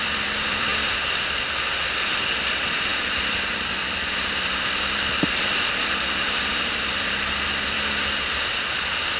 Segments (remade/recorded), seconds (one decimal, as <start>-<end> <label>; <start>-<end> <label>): 0.0-0.7 remade; 0.7-2.4 recorded; 2.4-9.2 remade